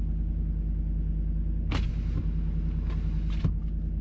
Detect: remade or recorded recorded